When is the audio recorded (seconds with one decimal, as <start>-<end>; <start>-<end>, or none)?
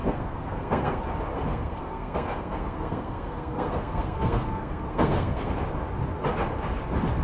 1.0-1.5; 5.5-7.2